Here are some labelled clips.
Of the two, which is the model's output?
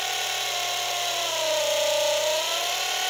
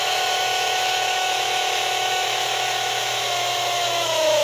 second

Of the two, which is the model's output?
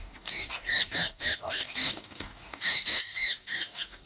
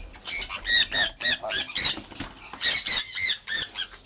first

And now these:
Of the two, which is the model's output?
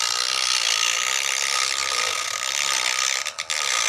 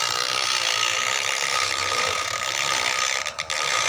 second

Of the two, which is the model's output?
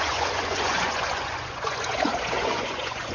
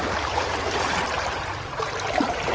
first